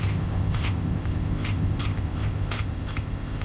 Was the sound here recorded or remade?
remade